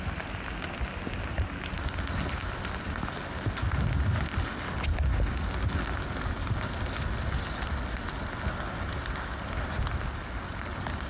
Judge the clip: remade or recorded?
recorded